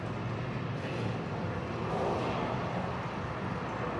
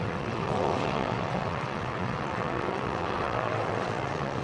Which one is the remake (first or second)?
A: second